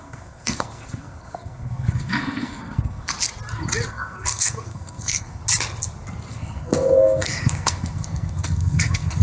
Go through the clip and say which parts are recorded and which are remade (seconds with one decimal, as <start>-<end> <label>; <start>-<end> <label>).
0.0-3.1 remade; 3.1-3.9 recorded; 3.9-5.4 remade; 5.4-6.3 recorded; 6.3-9.2 remade